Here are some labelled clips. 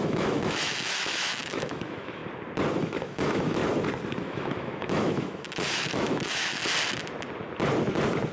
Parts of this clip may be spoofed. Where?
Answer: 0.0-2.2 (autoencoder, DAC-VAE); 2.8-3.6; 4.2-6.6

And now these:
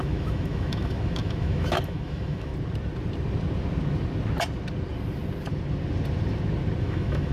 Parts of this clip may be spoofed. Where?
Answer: 0.0-2.5 (autoencoder, DAC-VAE); 6.8-7.3

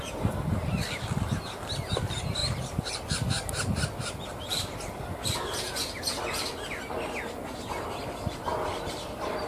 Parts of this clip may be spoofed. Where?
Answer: none

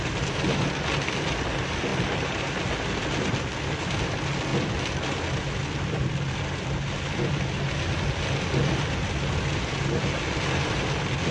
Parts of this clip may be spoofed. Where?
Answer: none

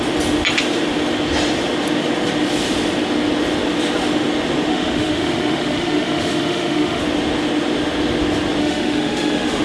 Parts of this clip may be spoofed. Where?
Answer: 4.7-7.0 (autoencoder, DAC-VAE); 8.6-9.6

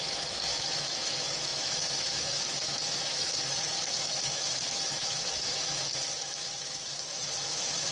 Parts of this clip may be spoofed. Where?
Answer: 0.0-7.9 (autoencoder, DAC-VAE)